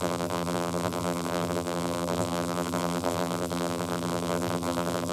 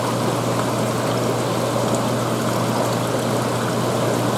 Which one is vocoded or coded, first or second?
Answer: first